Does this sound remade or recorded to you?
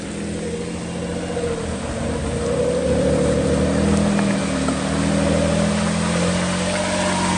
recorded